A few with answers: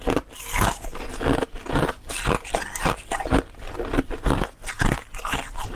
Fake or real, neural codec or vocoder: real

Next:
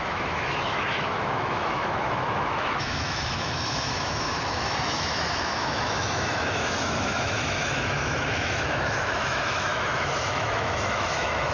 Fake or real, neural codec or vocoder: fake, autoencoder, DAC-VAE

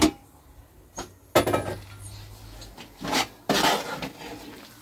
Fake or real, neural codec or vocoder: real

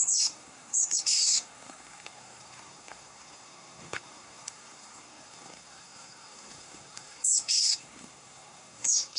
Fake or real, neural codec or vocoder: fake, codec, SNAC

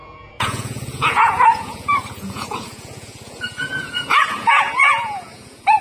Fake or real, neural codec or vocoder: fake, vocoder, Vocos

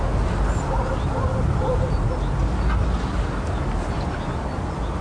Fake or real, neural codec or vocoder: real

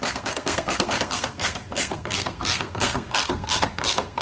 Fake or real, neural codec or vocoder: fake, codec, SNAC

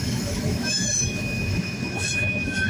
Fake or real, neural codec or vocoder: fake, autoencoder, DAC-VAE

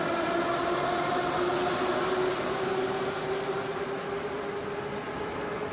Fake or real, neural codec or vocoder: real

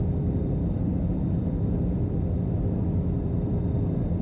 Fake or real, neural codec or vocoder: fake, vocoder, BigVGAN v2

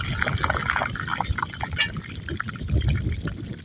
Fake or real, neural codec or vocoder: real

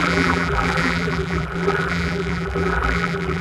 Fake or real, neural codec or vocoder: fake, vocoder, BigVGAN v2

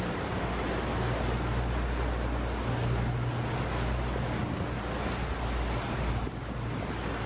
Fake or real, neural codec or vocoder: real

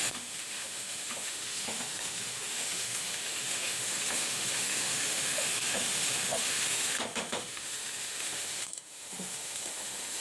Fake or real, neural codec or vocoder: fake, autoencoder, DAC-VAE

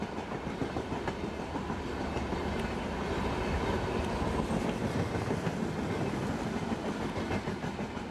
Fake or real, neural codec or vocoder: real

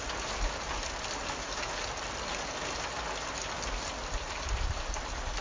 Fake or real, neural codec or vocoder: real